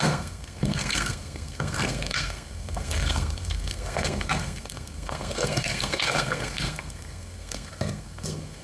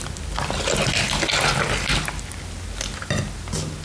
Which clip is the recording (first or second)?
second